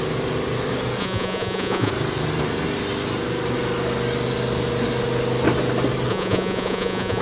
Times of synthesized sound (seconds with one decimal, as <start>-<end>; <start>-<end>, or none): 1.0-1.9; 6.1-7.2